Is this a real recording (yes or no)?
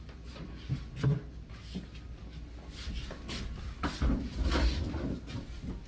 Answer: yes